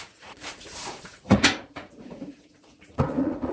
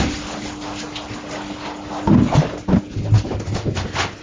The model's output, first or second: first